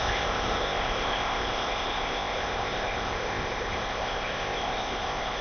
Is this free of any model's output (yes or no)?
no